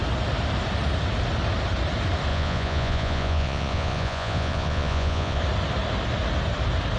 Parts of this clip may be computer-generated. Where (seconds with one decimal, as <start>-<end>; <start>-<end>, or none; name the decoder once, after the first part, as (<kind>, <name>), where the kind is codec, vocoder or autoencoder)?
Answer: 2.3-5.4 (vocoder, Vocos)